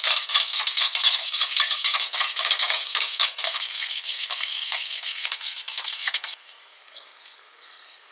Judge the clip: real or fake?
fake